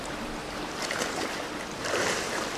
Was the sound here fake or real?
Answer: real